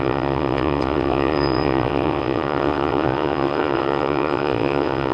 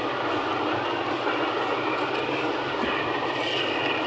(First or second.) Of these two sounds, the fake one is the first